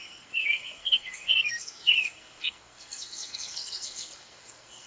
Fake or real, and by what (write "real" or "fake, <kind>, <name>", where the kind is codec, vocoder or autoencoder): fake, codec, SNAC